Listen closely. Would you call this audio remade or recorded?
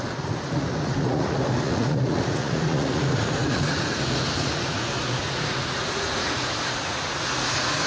remade